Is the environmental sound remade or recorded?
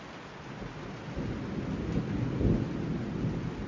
recorded